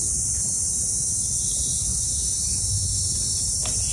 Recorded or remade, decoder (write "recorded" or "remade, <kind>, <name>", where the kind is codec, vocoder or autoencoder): recorded